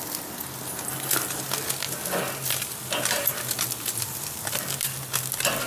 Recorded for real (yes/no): yes